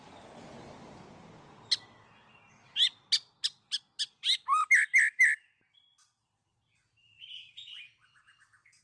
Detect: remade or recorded recorded